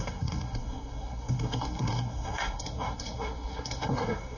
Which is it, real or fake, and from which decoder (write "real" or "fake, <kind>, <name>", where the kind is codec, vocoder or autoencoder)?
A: fake, codec, SNAC